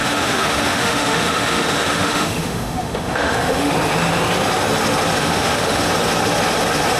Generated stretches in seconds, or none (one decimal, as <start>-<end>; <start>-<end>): 0.0-3.7; 5.2-5.8